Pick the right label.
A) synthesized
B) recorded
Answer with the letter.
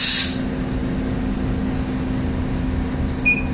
B